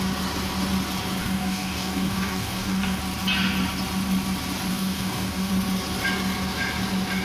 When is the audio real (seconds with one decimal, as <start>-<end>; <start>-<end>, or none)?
0.0-1.2; 3.0-4.7; 5.5-7.2